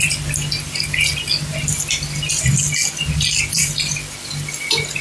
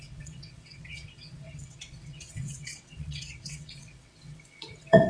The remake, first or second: second